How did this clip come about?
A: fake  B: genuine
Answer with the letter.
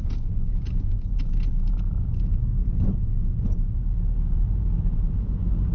A